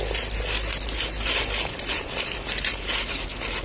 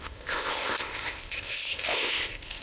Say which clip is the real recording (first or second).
first